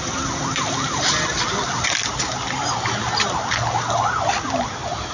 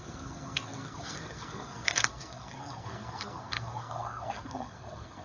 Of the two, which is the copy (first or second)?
second